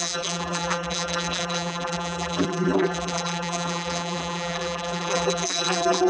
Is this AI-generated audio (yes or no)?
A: yes